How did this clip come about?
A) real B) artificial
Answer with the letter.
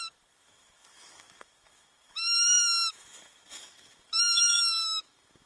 B